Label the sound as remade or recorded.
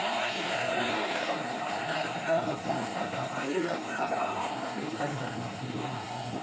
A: remade